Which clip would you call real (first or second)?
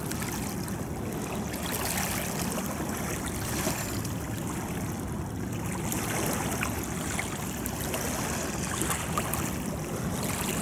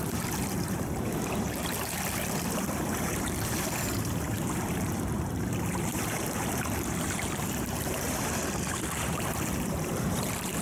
first